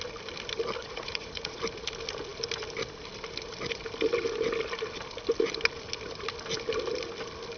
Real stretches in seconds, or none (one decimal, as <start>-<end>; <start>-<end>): 0.0-0.8; 1.6-7.6